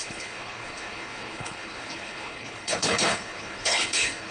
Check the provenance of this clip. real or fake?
fake